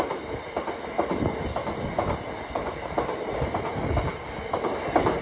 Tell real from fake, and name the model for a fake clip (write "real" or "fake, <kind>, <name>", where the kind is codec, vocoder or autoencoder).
real